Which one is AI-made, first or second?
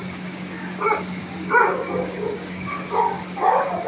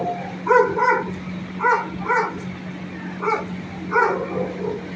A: first